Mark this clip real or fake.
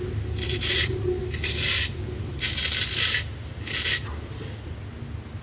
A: real